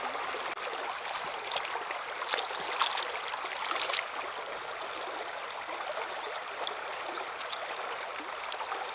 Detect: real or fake real